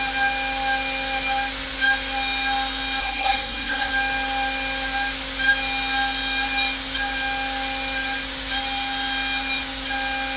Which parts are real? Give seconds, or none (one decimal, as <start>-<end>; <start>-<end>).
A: 0.0-3.0; 3.9-10.4